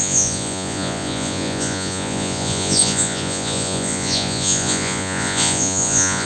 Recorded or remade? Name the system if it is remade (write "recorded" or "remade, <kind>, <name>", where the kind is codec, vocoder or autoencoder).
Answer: remade, vocoder, Vocos